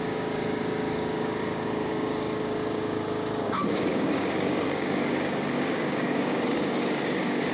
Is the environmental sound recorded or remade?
remade